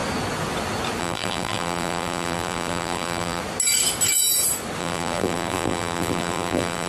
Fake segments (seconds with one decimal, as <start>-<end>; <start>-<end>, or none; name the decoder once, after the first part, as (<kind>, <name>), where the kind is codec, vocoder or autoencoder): 1.0-3.4 (vocoder, BigVGAN v2); 4.8-6.9